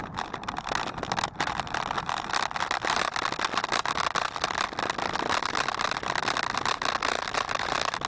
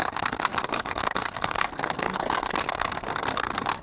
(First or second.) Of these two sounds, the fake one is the second